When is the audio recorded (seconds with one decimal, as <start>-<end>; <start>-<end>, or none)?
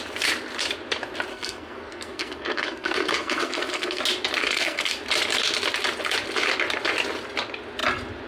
0.0-1.3; 4.0-4.4; 4.9-8.3